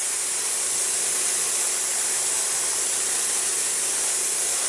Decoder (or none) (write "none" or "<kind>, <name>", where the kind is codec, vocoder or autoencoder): none